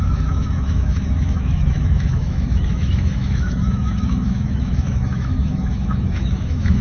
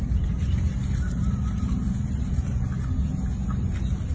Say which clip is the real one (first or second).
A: second